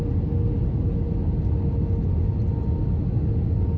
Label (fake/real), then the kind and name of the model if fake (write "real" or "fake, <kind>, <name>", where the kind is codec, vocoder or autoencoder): real